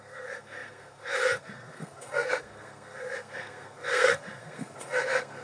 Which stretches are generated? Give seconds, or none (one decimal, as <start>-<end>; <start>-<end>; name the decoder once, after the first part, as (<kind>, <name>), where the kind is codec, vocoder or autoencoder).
0.0-5.4 (codec, SNAC)